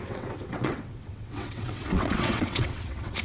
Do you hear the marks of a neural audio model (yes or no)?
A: yes